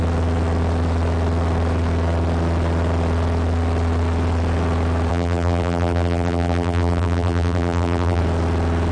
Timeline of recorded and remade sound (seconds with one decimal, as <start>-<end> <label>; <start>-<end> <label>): 0.0-5.1 recorded; 5.1-8.2 remade; 8.2-8.9 recorded